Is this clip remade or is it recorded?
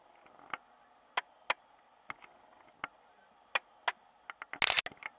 recorded